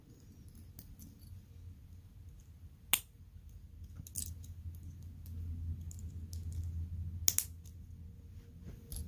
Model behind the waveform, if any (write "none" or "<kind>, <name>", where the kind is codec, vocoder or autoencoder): none